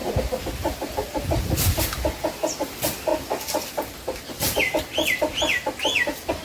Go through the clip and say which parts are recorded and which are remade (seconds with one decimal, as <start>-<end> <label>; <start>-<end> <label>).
0.0-3.1 remade; 3.1-4.3 recorded; 4.3-6.4 remade